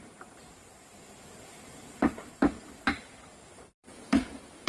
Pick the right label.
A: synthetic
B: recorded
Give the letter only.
A